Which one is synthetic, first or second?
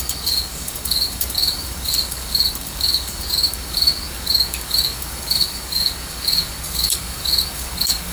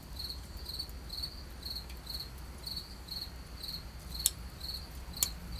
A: first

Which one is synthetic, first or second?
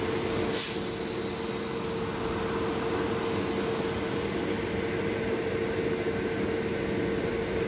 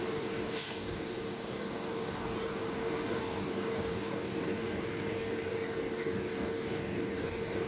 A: second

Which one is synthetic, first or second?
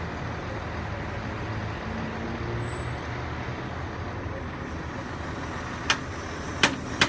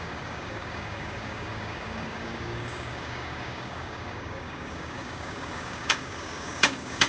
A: second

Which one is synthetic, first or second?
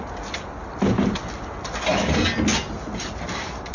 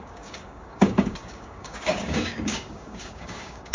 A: second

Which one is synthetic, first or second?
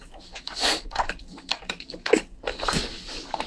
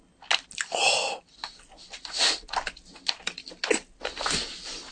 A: first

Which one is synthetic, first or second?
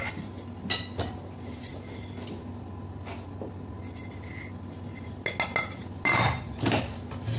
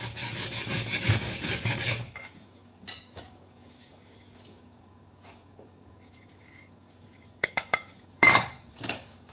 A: second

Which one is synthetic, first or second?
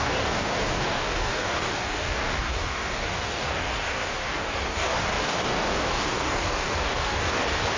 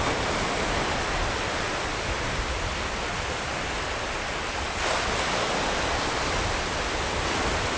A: first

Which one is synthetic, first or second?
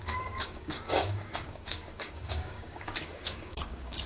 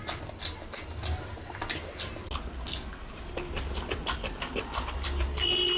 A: first